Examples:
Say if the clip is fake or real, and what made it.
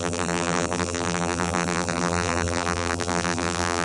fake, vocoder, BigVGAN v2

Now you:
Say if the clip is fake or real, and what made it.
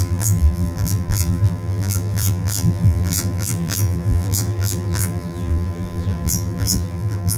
fake, vocoder, BigVGAN v2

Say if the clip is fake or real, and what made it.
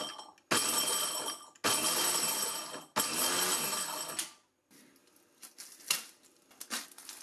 real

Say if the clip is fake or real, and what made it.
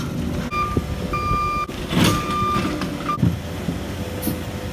real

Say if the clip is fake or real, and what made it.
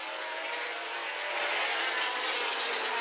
real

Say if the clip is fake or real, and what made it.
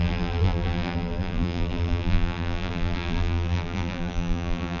fake, vocoder, BigVGAN v2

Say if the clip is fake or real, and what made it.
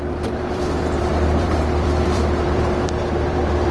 fake, vocoder, BigVGAN v2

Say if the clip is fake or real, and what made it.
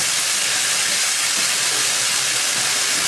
real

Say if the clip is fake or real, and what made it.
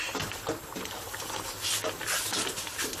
real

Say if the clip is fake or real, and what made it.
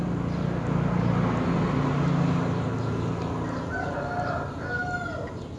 real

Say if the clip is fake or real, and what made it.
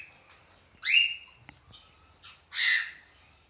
real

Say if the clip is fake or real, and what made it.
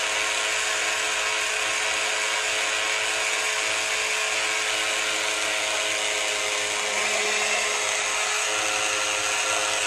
real